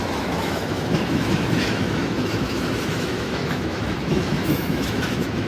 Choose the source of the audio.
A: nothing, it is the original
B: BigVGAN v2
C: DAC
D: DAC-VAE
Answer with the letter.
D